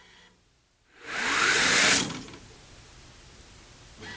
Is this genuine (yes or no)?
yes